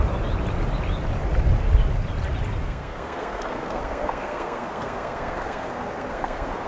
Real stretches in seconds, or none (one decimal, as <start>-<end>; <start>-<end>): 0.0-2.6